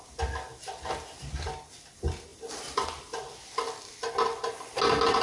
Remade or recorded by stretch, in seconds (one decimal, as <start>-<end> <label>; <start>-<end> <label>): 0.0-5.2 recorded

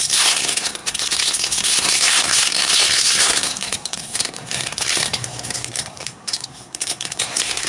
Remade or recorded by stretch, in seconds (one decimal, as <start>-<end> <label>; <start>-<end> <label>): 0.0-7.7 remade

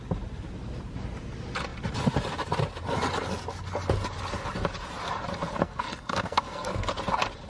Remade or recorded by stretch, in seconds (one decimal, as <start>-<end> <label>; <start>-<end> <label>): 0.0-5.4 recorded; 5.4-6.9 remade; 6.9-7.5 recorded

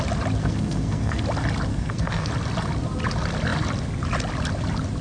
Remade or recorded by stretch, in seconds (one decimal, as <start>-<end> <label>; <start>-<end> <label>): 0.0-0.4 recorded; 0.4-1.2 remade; 1.2-1.7 recorded; 1.7-2.3 remade; 2.3-5.0 recorded

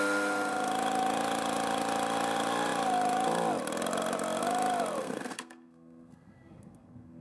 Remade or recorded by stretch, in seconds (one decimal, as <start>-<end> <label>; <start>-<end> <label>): 0.0-5.0 recorded; 5.0-7.2 remade

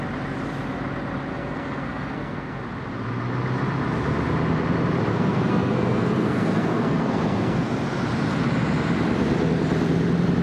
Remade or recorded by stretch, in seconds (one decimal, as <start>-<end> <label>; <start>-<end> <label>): 0.0-1.3 recorded; 1.3-2.6 remade; 2.6-5.1 recorded; 5.1-7.7 remade; 7.7-10.4 recorded